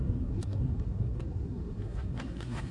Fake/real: fake